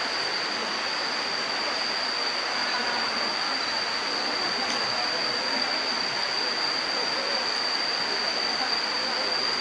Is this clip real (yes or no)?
yes